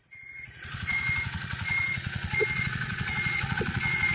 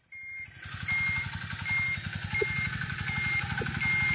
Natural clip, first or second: second